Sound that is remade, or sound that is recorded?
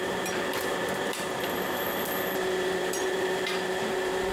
remade